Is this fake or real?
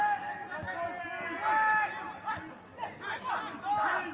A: real